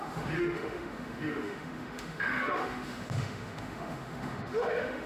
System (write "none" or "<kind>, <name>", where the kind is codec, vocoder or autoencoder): autoencoder, DAC-VAE